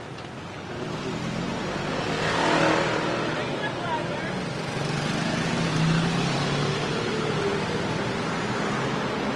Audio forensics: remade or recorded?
recorded